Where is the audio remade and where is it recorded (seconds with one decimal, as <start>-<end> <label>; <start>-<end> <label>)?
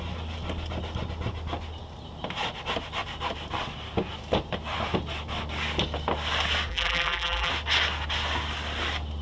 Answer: 0.0-6.7 recorded; 6.7-7.5 remade; 7.5-9.2 recorded